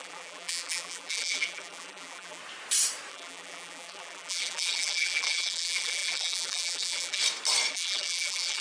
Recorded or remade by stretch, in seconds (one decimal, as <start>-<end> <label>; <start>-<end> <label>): 0.0-2.4 remade; 2.4-3.1 recorded; 3.1-7.2 remade; 7.2-7.7 recorded; 7.7-8.6 remade